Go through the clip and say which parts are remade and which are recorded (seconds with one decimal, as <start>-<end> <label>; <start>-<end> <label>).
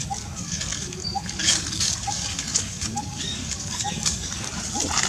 0.0-4.5 remade; 4.5-5.1 recorded